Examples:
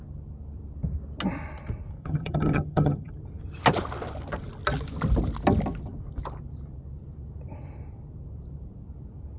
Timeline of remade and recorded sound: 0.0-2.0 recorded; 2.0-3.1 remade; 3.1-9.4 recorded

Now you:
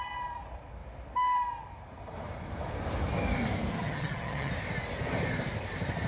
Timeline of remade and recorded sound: 0.0-3.7 recorded; 3.7-4.5 remade; 4.5-6.1 recorded

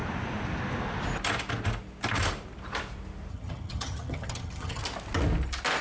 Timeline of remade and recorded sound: 0.0-3.3 recorded; 3.3-4.8 remade; 4.8-5.8 recorded

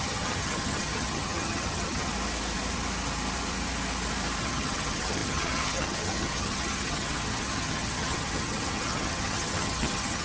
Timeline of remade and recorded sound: 0.0-2.1 remade; 2.1-4.4 recorded; 4.4-10.2 remade

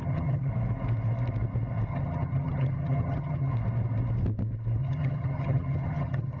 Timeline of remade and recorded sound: 0.0-0.5 remade; 0.5-1.9 recorded; 1.9-3.5 remade; 3.5-4.8 recorded; 4.8-6.4 remade

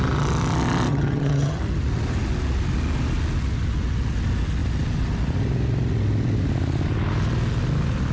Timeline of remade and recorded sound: 0.0-0.9 recorded; 0.9-1.6 remade; 1.6-8.1 recorded